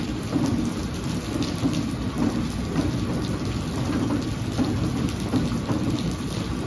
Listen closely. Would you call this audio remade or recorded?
recorded